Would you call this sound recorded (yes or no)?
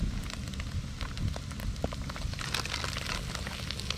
yes